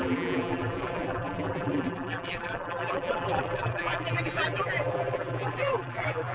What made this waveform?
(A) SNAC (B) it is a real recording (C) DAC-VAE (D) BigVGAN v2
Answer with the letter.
D